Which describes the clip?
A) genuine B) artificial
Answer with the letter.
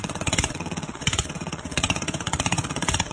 B